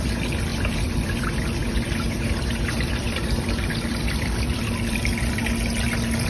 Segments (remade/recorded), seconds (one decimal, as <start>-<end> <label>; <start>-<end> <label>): 0.0-0.5 recorded; 0.5-1.2 remade; 1.2-1.6 recorded; 1.6-5.4 remade; 5.4-6.3 recorded